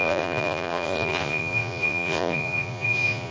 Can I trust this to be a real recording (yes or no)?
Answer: no